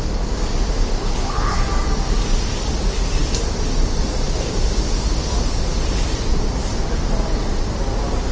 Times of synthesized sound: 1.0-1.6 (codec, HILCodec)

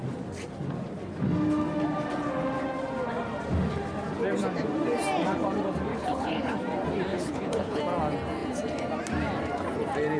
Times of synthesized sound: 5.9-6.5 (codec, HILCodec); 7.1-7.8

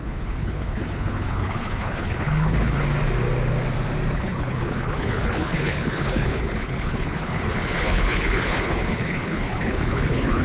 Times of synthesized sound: 0.0-2.8 (codec, HILCodec); 4.1-10.4